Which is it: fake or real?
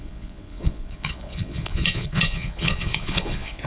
fake